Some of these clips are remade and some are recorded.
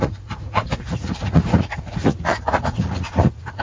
remade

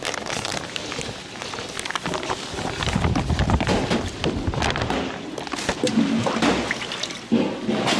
recorded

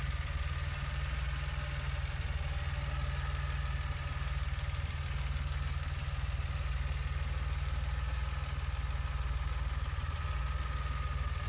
recorded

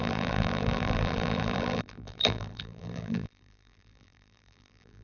remade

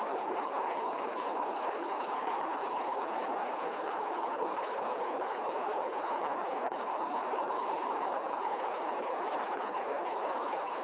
remade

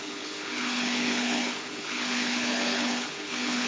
remade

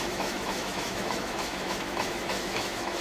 remade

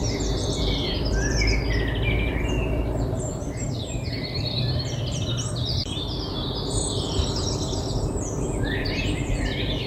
remade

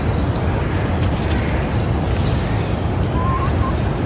recorded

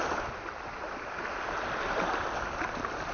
recorded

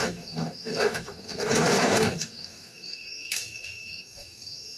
remade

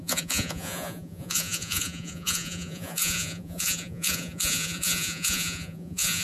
remade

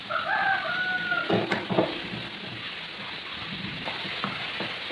recorded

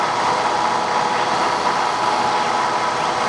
recorded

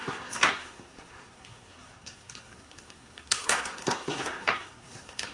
remade